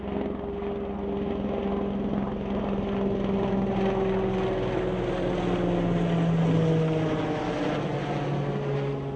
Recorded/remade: recorded